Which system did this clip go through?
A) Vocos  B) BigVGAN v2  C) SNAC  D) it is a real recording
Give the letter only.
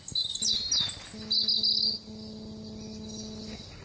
D